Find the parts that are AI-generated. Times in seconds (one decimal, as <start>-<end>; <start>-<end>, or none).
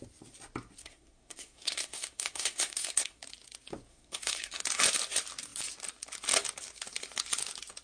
0.8-3.2; 3.9-4.6